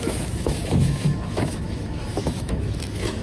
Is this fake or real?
fake